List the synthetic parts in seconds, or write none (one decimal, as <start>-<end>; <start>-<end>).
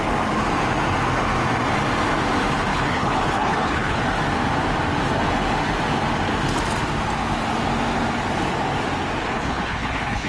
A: 2.7-4.0; 9.2-10.3